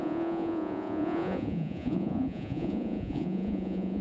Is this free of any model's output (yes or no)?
no